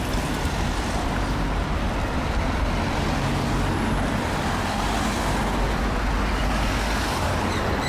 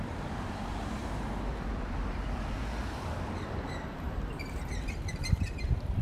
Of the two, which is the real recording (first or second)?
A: first